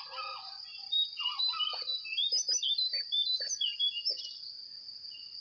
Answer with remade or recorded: recorded